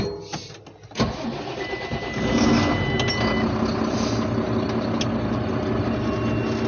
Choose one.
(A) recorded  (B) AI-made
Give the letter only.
A